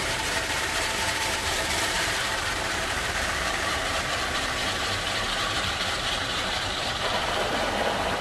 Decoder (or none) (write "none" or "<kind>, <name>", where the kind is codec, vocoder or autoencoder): vocoder, BigVGAN v2